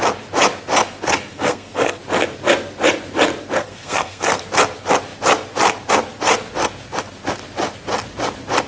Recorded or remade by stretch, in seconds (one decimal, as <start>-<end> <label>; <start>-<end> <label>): 0.0-1.3 recorded; 1.3-2.0 remade; 2.0-3.6 recorded; 3.6-4.4 remade; 4.4-8.7 recorded